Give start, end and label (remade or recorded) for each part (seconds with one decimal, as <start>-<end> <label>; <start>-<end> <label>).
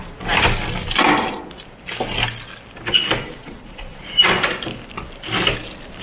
0.0-3.4 recorded; 3.4-4.0 remade; 4.0-6.0 recorded